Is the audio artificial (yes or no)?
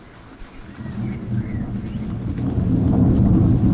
no